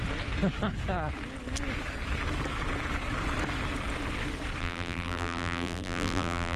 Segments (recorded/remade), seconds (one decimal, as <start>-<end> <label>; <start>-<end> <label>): 0.0-4.6 recorded; 4.6-6.6 remade